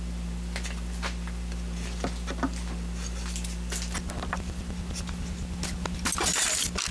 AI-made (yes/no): no